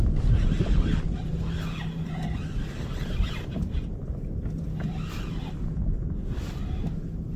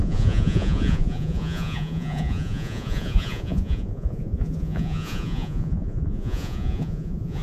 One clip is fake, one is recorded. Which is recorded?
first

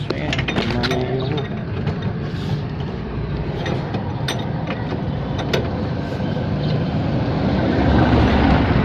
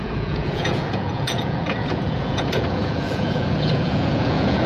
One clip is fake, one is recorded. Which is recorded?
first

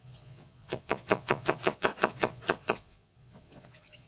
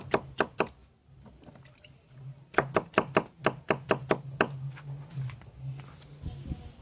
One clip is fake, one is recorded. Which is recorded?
second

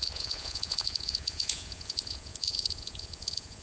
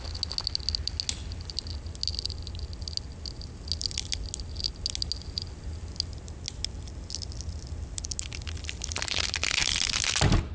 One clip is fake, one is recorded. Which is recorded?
second